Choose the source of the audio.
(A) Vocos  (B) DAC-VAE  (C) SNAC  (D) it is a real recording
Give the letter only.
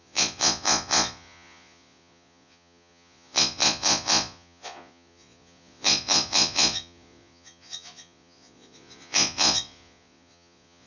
A